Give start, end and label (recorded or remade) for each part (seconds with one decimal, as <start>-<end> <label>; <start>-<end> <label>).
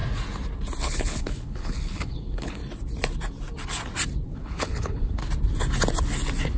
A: 0.0-0.8 recorded; 0.8-2.6 remade; 2.6-4.3 recorded; 4.3-5.2 remade; 5.2-6.6 recorded